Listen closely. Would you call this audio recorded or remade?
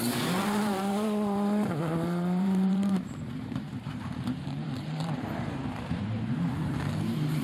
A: remade